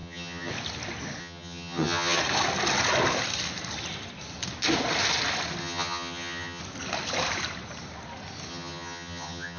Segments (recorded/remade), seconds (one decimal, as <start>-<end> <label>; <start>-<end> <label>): 0.0-0.5 remade; 0.5-1.2 recorded; 1.2-2.2 remade; 2.2-5.6 recorded; 5.6-6.6 remade; 6.6-8.5 recorded; 8.5-9.6 remade